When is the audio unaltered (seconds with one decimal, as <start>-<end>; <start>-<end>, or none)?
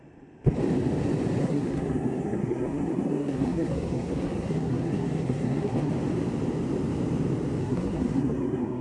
0.0-1.4; 5.9-7.6